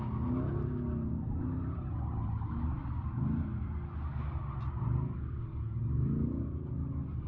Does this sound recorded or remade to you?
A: recorded